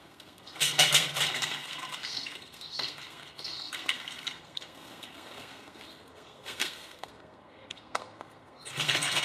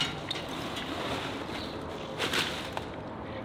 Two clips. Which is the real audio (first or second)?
second